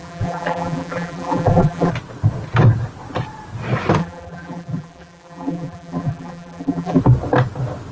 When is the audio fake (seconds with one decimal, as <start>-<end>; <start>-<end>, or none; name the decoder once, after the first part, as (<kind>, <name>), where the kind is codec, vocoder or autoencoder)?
0.0-1.9 (vocoder, BigVGAN v2); 4.0-7.0